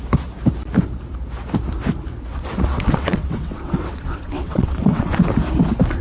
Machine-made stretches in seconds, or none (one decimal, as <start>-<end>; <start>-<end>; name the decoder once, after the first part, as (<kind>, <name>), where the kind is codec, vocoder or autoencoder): 2.3-5.2 (vocoder, WaveNeXt)